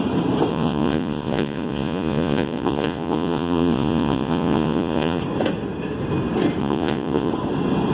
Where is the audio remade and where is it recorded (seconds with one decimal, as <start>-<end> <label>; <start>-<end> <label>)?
0.0-0.5 recorded; 0.5-5.2 remade; 5.2-6.6 recorded; 6.6-7.3 remade; 7.3-7.9 recorded